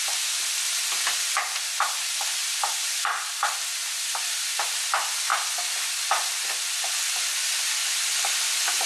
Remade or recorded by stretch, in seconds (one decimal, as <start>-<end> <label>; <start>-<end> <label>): 0.0-8.9 recorded